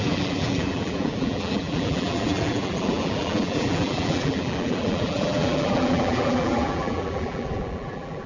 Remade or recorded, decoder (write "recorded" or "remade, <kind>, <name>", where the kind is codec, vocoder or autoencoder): remade, vocoder, BigVGAN v2